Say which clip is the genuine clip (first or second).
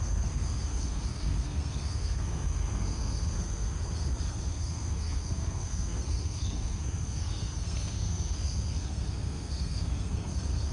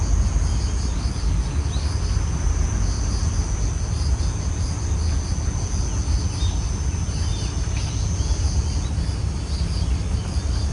second